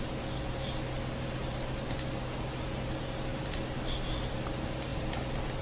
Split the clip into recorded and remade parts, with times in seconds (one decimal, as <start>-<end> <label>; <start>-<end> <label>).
0.0-3.3 recorded; 3.3-4.0 remade; 4.0-4.9 recorded; 4.9-5.6 remade